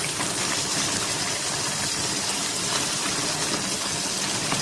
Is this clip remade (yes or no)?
yes